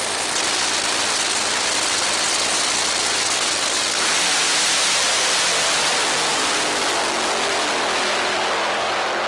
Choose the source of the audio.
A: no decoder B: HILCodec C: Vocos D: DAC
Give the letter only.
A